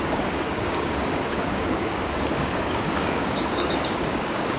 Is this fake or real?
fake